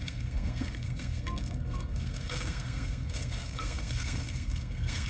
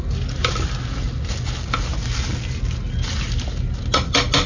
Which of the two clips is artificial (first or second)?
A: first